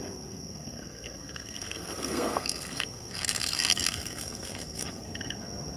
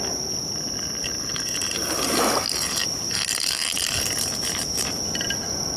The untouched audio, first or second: second